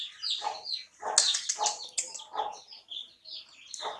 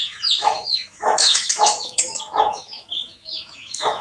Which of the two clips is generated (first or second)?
second